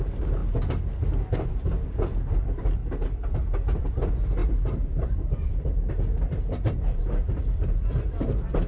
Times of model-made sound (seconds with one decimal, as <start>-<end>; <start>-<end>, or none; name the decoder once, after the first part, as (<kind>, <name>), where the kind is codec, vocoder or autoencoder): 0.0-0.4 (vocoder, BigVGAN v2); 1.3-2.8; 3.8-8.7